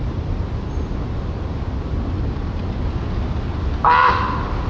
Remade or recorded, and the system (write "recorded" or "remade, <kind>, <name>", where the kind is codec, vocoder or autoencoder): recorded